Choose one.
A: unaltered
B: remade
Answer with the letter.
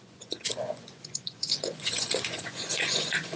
B